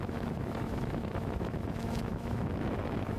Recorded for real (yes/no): no